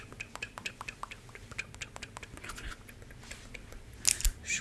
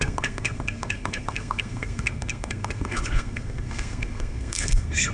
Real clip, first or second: first